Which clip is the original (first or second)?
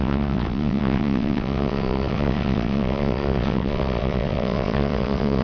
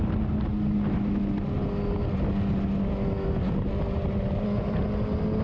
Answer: second